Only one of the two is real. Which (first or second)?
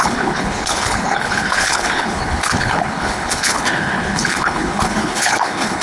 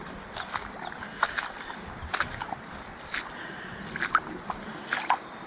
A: second